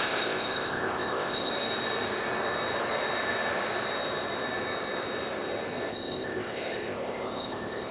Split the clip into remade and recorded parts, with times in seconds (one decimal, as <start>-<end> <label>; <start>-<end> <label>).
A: 0.0-1.5 remade; 1.5-5.9 recorded; 5.9-7.9 remade